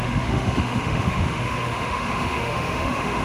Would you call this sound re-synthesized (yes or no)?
yes